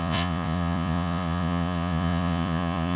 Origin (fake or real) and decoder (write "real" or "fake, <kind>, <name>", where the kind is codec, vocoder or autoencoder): fake, vocoder, Vocos